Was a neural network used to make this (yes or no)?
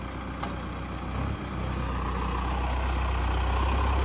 no